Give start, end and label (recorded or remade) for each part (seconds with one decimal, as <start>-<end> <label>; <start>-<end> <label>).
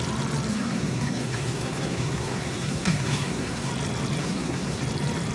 0.0-0.5 recorded; 0.5-3.7 remade; 3.7-4.2 recorded; 4.2-4.8 remade; 4.8-5.3 recorded